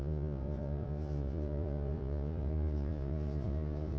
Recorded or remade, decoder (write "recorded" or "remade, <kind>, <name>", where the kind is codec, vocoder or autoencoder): remade, vocoder, Vocos